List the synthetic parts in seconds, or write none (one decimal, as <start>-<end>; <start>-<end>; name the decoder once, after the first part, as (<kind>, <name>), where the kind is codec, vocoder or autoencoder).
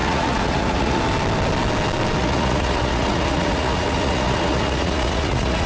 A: 0.0-1.0 (vocoder, Vocos); 2.2-5.7